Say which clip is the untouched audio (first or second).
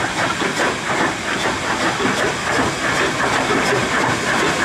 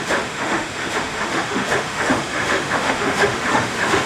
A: first